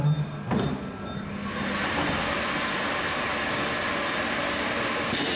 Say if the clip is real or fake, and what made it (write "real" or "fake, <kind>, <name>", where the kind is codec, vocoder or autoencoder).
real